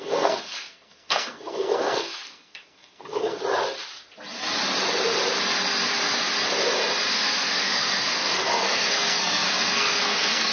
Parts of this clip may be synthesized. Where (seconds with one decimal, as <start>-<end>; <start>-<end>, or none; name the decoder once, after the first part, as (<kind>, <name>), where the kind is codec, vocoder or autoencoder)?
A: 0.0-3.4 (codec, SNAC); 7.1-10.5